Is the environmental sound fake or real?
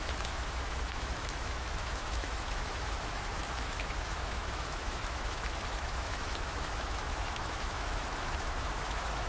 fake